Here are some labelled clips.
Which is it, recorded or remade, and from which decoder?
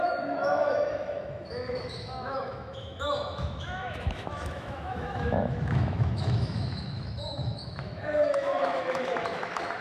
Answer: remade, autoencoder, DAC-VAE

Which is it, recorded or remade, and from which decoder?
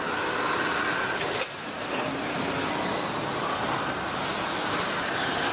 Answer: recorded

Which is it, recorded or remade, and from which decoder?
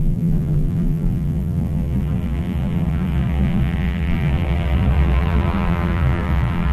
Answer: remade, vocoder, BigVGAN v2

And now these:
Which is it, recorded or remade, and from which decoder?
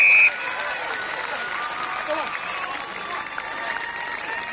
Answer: recorded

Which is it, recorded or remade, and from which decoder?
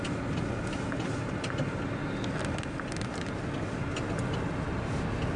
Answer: recorded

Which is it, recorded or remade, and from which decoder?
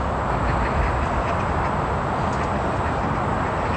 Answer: recorded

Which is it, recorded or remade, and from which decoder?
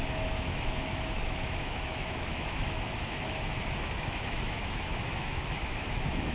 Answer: remade, autoencoder, DAC-VAE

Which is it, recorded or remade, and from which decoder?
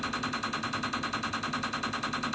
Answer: recorded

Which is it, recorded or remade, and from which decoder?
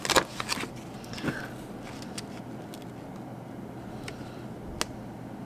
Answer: recorded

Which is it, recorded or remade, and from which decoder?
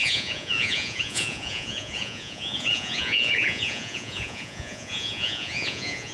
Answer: remade, vocoder, Vocos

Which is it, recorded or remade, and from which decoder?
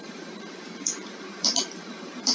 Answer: remade, vocoder, BigVGAN v2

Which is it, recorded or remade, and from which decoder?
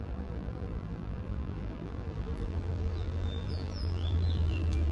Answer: remade, vocoder, BigVGAN v2